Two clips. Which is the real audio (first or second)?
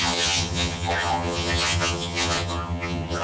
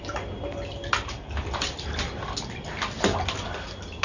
second